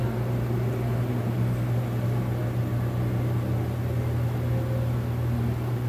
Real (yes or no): yes